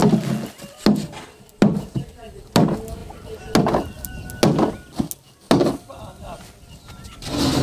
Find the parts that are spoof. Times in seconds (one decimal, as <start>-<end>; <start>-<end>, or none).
none